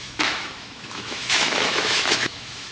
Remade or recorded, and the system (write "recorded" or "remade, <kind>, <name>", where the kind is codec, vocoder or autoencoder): remade, autoencoder, DAC-VAE